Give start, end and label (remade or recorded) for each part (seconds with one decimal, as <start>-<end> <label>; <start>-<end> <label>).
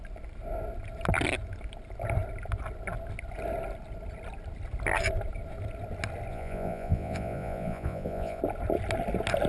0.0-6.3 recorded; 6.3-8.4 remade; 8.4-9.5 recorded